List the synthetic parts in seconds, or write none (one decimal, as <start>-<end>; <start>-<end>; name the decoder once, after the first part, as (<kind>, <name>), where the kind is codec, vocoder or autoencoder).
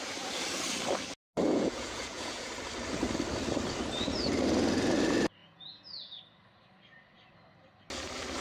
1.5-2.5 (vocoder, Vocos); 5.4-6.2